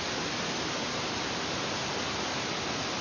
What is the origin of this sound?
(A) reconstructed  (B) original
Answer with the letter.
B